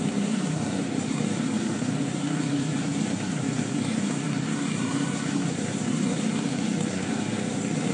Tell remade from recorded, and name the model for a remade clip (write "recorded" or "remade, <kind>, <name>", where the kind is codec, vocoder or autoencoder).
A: remade, codec, SNAC